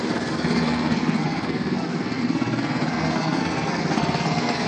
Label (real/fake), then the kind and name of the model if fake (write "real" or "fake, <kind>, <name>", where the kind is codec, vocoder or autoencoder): fake, codec, SNAC